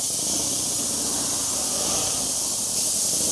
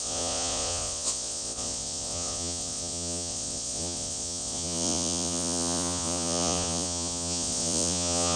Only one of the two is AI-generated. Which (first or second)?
second